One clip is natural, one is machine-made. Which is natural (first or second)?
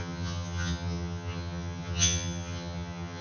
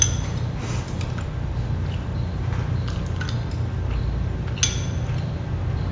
second